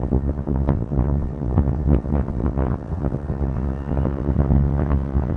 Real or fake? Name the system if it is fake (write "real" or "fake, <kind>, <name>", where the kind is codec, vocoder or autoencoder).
fake, vocoder, WaveNeXt